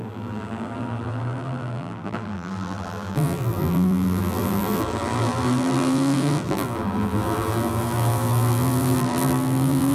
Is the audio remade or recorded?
remade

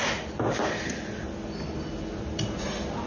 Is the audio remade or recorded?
recorded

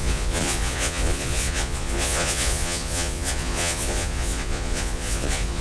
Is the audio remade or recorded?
remade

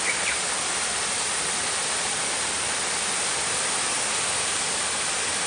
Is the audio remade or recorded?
recorded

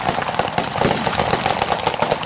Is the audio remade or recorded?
recorded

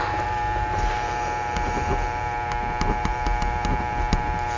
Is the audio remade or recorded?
remade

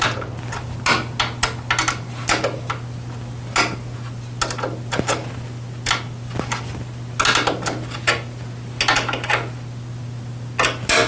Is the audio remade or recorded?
recorded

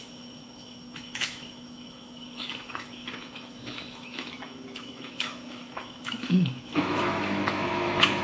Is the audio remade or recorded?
remade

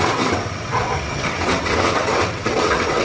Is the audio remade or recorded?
remade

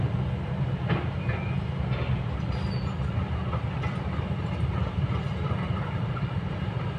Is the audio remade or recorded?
recorded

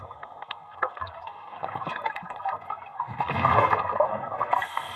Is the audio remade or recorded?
remade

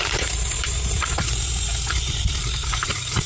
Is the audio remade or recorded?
remade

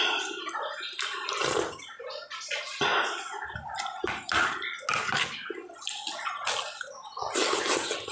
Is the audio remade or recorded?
recorded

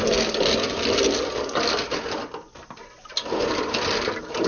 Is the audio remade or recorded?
recorded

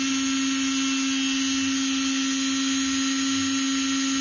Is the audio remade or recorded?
recorded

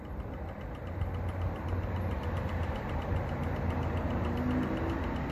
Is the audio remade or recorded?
recorded